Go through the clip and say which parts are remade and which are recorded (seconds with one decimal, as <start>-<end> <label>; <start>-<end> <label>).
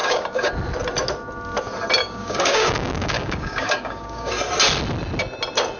0.0-0.5 remade; 0.5-2.0 recorded; 2.0-4.3 remade; 4.3-5.8 recorded